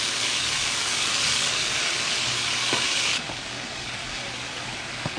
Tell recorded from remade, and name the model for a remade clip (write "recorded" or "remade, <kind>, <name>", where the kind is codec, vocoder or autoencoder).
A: remade, codec, DAC